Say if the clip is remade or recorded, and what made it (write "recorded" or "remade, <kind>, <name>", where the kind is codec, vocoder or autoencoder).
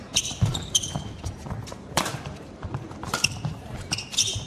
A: remade, vocoder, BigVGAN v2